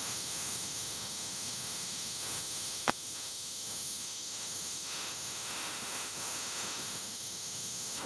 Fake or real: fake